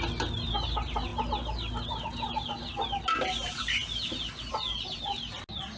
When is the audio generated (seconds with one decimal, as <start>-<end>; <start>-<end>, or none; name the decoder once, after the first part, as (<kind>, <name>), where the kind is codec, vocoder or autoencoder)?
none